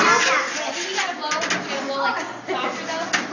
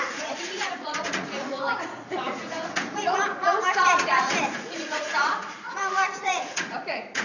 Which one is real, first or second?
first